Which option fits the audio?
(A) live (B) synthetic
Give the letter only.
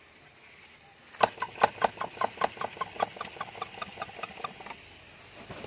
A